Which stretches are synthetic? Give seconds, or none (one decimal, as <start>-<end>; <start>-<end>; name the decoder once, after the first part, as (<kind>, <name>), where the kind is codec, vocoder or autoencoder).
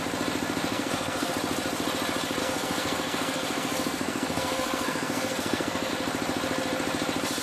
0.7-1.3 (codec, SNAC); 2.4-5.9